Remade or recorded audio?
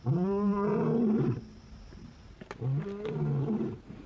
recorded